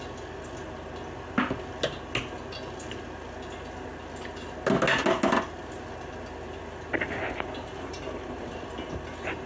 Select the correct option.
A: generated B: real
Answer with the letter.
B